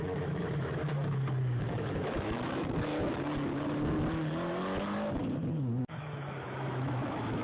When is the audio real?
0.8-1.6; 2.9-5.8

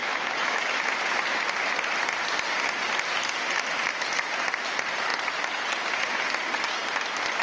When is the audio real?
0.8-7.4

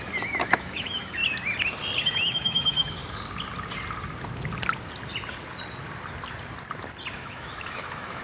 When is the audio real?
1.2-2.0; 3.0-7.1

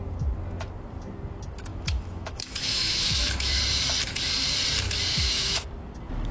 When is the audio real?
0.0-1.7; 3.6-5.1; 5.6-6.3

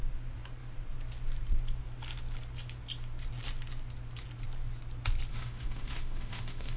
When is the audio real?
0.0-5.3